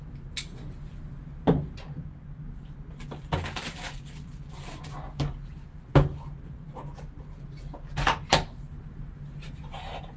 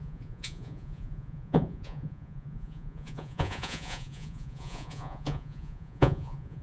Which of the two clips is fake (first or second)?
second